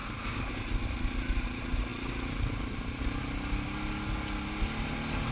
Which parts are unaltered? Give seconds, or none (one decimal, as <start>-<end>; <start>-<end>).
0.0-5.3